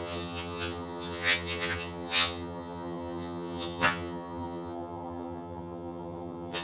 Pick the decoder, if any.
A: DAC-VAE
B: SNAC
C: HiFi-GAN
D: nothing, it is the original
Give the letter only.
C